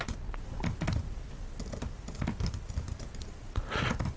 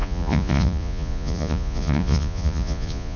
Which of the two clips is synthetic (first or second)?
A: second